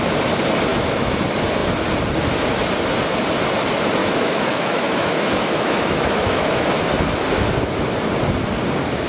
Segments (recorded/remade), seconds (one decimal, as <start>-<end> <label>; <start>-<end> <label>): 0.0-0.7 recorded; 0.7-1.2 remade; 1.2-4.0 recorded; 4.0-6.6 remade; 6.6-9.1 recorded